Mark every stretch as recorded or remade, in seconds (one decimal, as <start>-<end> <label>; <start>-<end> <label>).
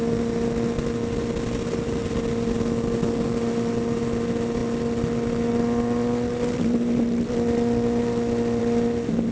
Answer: 0.0-9.3 recorded